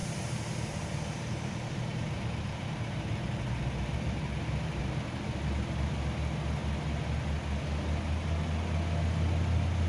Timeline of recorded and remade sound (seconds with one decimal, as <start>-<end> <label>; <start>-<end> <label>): 0.0-4.8 remade; 4.8-9.9 recorded